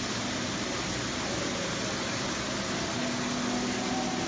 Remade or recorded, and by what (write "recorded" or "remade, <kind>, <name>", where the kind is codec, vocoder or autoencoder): recorded